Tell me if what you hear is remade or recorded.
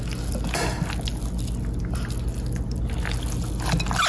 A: recorded